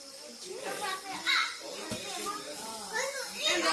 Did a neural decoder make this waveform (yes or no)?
no